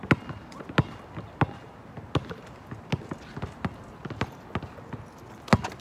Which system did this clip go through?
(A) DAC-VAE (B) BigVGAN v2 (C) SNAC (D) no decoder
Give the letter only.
D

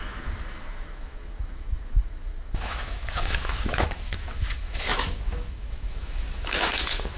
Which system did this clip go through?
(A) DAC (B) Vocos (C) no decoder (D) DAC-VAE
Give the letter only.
D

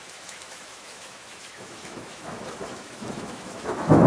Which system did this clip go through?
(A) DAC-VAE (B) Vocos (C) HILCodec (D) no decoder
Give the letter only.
A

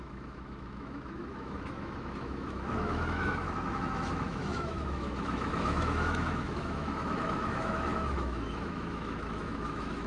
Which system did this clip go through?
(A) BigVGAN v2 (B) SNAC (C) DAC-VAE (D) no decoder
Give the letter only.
C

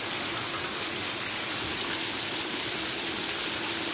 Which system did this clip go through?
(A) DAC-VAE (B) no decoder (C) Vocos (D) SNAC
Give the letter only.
B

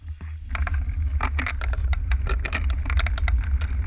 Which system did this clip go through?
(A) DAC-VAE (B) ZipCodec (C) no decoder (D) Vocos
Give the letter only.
C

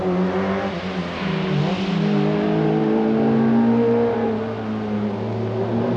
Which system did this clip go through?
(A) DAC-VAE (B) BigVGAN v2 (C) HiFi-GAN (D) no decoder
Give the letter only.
D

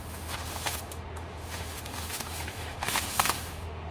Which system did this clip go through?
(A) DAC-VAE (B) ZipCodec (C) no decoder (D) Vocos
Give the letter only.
A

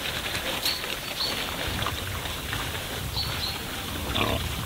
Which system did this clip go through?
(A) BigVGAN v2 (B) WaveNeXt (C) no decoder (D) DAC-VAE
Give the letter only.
C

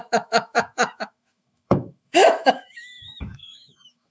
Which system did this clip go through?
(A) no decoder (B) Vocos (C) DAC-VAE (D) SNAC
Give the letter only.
C